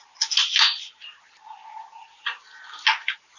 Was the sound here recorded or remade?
recorded